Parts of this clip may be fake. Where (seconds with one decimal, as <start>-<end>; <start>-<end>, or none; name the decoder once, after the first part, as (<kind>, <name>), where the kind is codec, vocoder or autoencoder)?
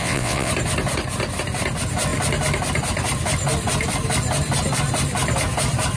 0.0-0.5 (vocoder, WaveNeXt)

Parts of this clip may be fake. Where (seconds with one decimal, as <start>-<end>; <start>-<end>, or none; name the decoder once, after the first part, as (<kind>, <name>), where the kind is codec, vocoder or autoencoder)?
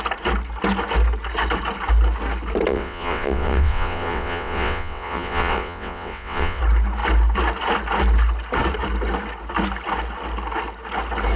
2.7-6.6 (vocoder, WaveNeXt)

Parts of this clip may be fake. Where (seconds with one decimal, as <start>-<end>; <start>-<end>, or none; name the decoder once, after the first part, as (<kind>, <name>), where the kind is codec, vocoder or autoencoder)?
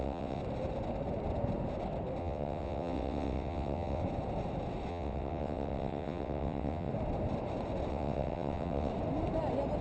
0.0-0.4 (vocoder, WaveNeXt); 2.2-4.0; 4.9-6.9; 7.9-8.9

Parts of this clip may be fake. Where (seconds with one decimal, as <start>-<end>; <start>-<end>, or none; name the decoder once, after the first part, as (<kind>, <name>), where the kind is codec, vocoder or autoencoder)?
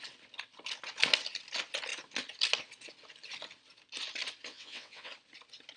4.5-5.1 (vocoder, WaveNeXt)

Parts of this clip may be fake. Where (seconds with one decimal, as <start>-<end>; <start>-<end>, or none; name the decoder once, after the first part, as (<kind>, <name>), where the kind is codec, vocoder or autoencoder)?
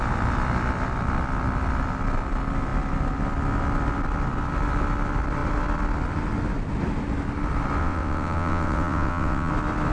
7.8-9.5 (vocoder, WaveNeXt)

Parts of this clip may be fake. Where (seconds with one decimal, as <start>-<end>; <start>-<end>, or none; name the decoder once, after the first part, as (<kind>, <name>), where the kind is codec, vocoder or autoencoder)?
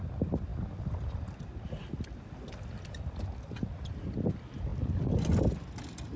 none